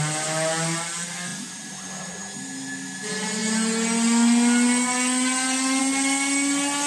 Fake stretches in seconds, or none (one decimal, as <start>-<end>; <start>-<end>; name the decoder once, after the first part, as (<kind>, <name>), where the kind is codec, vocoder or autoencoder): 1.3-1.9 (vocoder, BigVGAN v2)

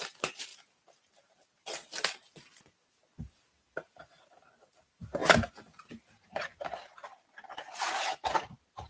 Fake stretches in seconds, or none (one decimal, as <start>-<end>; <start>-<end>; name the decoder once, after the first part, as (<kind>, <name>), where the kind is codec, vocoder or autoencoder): 0.0-0.5 (vocoder, BigVGAN v2); 4.8-5.2; 5.9-8.9

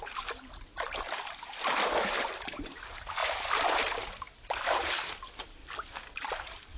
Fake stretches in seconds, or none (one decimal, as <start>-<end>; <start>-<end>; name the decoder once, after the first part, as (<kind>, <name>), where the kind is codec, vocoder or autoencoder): 0.0-0.7 (vocoder, BigVGAN v2); 2.0-5.6; 6.3-6.8

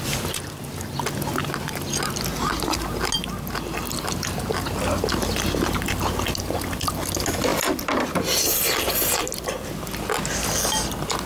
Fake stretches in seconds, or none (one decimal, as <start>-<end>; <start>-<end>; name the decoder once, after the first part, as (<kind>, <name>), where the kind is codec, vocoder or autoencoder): 7.5-8.1 (vocoder, BigVGAN v2)

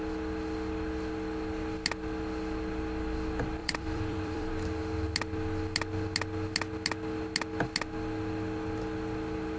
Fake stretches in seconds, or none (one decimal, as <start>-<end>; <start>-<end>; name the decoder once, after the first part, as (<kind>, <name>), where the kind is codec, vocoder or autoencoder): 3.6-4.5 (vocoder, BigVGAN v2)

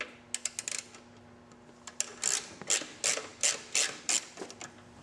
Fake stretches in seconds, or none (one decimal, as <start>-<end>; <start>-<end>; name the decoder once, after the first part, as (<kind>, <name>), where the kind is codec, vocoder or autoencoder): none

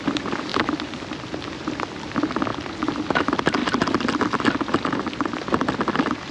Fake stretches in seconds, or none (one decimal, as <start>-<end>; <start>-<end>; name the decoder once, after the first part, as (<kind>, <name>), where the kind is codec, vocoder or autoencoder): 2.5-3.2 (vocoder, BigVGAN v2); 3.6-4.4